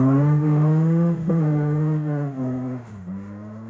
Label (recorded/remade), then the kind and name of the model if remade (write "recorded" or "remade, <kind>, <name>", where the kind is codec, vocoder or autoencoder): remade, autoencoder, DAC-VAE